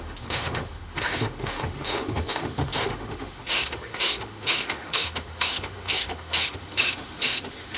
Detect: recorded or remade remade